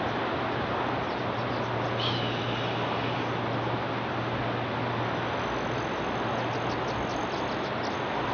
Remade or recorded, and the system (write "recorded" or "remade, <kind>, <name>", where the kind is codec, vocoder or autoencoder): recorded